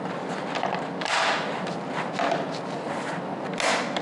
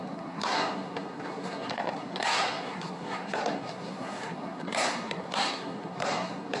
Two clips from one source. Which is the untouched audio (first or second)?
first